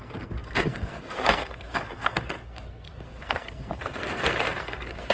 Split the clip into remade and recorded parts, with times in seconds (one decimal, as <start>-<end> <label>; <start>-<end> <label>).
0.0-5.1 remade